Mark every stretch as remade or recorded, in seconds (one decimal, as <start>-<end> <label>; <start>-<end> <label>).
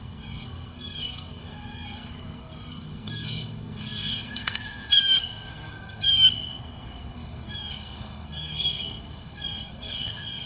0.0-10.5 remade